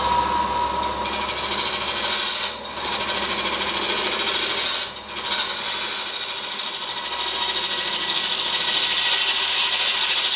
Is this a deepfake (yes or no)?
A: no